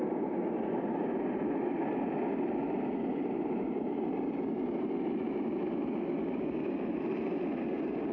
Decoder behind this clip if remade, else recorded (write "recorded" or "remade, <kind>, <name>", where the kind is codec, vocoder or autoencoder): recorded